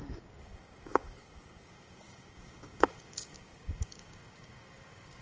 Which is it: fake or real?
fake